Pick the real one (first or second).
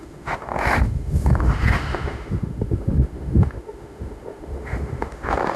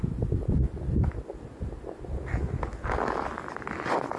second